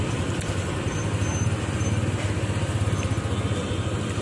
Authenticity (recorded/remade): recorded